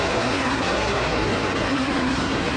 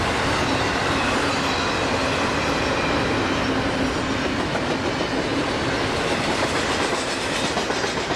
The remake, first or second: first